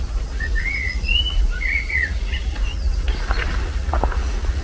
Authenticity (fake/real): fake